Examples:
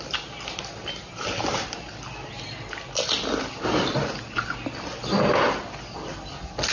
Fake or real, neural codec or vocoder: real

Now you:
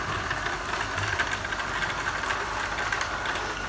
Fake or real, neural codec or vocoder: real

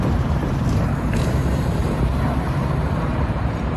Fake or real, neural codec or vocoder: fake, vocoder, BigVGAN v2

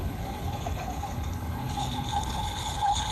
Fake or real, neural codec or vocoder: fake, codec, HILCodec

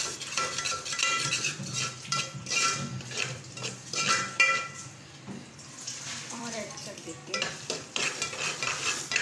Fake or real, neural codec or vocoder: fake, vocoder, BigVGAN v2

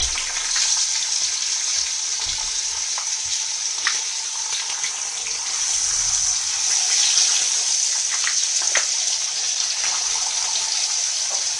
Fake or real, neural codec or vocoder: real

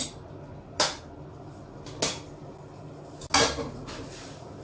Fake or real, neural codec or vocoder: real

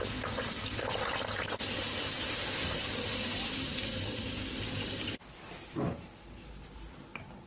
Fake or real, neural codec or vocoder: real